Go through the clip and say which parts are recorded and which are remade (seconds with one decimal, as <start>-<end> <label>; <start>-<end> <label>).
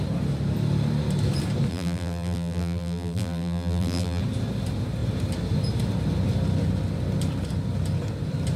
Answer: 0.0-1.7 recorded; 1.7-4.2 remade; 4.2-8.6 recorded